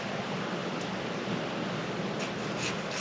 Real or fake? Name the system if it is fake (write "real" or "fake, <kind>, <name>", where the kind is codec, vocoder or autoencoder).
real